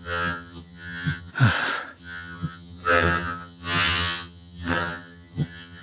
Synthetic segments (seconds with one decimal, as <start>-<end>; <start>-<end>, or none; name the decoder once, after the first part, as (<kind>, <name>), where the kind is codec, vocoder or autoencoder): 0.0-1.3 (vocoder, HiFi-GAN); 2.0-5.8